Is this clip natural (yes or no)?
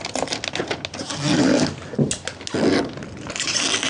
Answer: yes